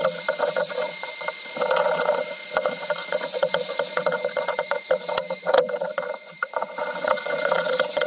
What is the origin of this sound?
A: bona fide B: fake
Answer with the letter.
B